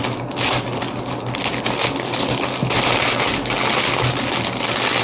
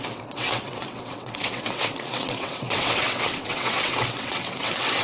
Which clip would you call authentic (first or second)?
first